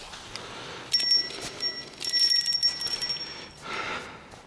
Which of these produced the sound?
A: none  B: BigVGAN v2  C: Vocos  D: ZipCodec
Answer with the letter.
A